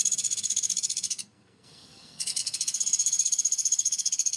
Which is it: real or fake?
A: fake